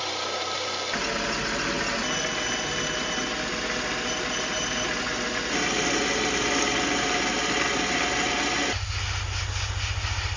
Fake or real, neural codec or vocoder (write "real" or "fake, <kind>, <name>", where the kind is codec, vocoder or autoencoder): real